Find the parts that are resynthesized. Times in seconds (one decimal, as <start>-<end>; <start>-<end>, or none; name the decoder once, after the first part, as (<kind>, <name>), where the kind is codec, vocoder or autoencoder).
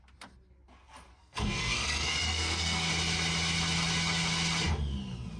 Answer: 1.1-2.9 (codec, SNAC)